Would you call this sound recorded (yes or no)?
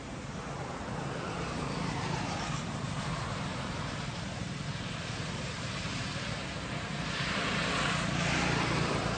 no